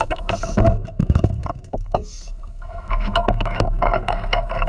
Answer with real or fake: fake